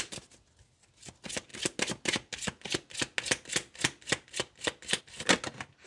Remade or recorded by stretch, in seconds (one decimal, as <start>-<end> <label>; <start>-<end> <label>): 0.0-5.9 recorded